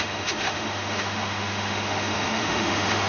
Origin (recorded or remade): remade